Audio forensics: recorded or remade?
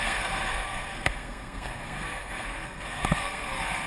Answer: remade